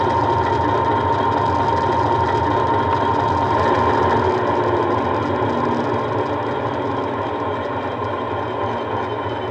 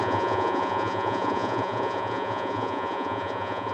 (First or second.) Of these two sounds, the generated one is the second